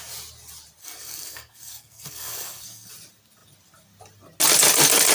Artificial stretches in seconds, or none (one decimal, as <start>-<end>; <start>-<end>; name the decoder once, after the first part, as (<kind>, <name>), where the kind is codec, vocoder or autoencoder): 0.8-2.9 (codec, SNAC)